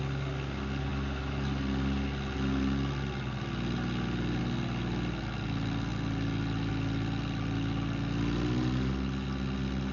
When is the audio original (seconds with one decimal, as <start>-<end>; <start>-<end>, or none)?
0.0-9.9